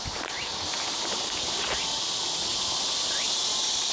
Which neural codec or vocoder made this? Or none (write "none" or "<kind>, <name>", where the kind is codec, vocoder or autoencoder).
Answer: none